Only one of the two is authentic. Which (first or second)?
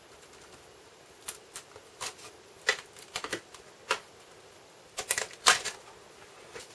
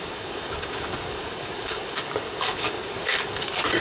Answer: first